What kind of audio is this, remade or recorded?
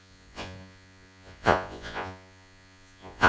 remade